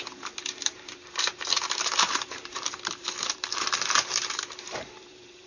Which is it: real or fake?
fake